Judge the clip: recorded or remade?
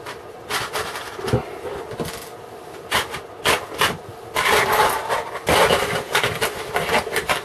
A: recorded